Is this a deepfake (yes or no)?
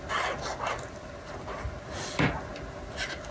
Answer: no